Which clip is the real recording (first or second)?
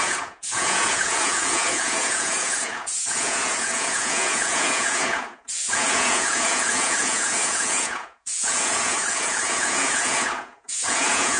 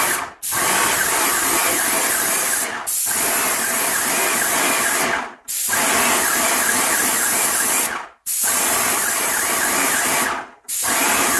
second